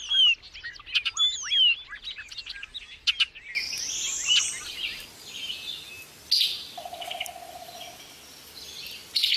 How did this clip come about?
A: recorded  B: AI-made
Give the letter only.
A